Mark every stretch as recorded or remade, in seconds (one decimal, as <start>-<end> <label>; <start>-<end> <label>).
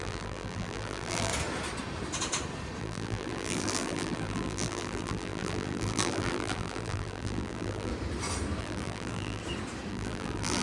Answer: 0.0-1.3 remade; 1.3-2.8 recorded; 2.8-7.9 remade; 7.9-8.6 recorded; 8.6-9.4 remade; 9.4-9.9 recorded; 9.9-10.6 remade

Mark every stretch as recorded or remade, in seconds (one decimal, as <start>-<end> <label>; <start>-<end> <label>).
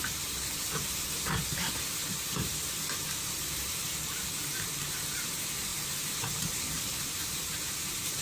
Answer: 0.0-8.2 remade